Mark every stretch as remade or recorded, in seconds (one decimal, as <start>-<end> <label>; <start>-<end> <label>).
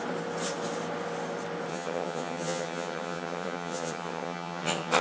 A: 0.0-1.7 recorded; 1.7-5.0 remade